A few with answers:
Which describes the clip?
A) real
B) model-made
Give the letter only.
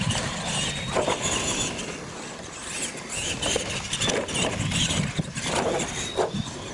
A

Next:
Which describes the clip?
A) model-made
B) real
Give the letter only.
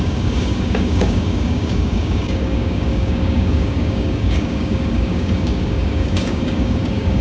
A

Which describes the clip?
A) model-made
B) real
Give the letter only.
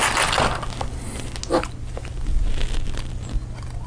B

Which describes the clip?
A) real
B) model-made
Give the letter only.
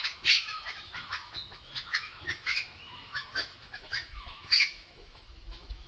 B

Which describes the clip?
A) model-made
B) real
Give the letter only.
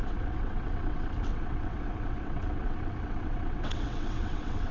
A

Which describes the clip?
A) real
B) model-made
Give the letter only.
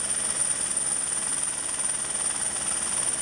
A